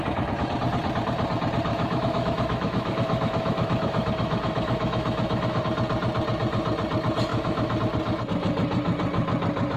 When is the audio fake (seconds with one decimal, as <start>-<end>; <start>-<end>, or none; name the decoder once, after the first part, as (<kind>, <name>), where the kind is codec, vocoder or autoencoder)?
1.7-5.6 (autoencoder, DAC-VAE); 7.3-7.8